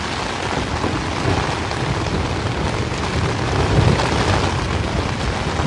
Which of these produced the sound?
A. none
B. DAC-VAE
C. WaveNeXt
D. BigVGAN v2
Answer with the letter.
A